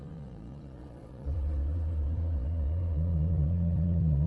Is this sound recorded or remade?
remade